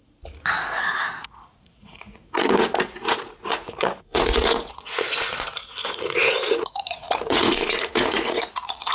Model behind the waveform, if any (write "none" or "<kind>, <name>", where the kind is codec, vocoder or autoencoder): vocoder, Vocos